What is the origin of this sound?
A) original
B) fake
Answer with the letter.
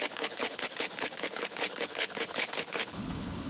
B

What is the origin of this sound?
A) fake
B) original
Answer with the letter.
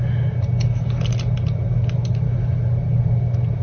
B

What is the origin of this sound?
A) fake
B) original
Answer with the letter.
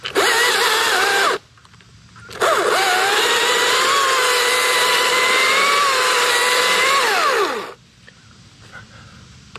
B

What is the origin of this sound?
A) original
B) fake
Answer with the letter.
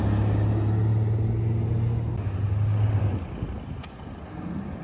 A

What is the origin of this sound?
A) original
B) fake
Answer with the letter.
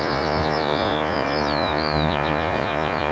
B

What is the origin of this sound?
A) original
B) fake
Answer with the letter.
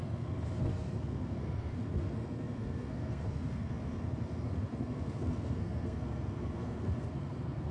B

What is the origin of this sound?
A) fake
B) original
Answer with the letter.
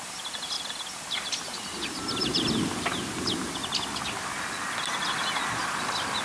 B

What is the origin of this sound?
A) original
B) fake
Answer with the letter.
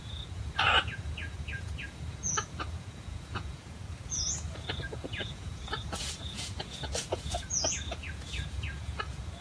B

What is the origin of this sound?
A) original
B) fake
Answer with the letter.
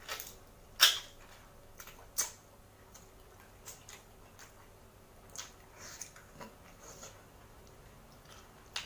A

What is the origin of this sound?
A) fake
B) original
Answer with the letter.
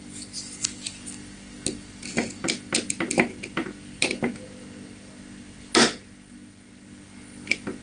B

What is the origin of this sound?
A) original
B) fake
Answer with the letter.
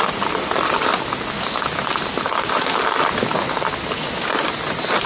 A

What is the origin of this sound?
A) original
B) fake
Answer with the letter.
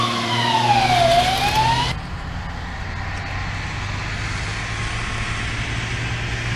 A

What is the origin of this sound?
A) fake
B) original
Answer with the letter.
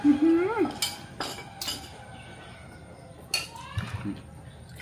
B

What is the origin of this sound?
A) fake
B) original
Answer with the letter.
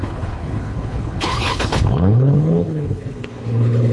A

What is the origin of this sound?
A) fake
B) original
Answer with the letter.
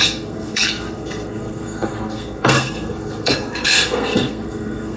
A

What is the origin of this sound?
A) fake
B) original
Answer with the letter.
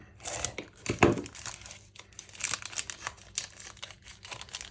B